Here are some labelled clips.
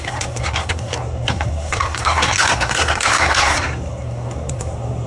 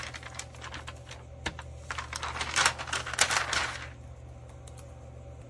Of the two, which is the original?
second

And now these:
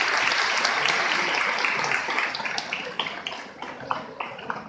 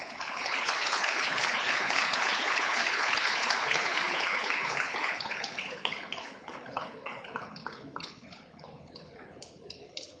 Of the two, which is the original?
first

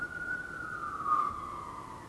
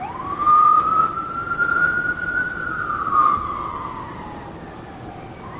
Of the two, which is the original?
first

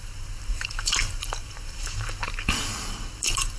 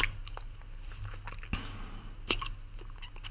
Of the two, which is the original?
second